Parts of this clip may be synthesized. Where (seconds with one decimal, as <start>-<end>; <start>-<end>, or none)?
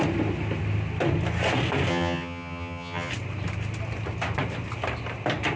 1.9-3.1